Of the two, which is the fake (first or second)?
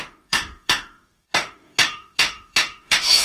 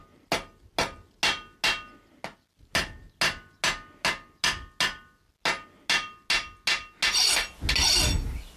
first